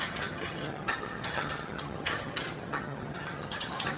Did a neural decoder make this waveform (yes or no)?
yes